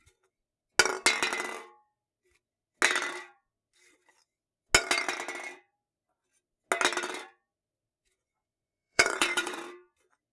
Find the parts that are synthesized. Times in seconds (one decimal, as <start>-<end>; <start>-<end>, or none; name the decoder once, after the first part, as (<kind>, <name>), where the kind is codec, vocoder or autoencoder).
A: 8.0-9.6 (vocoder, Vocos)